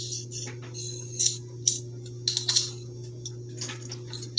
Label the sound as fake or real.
real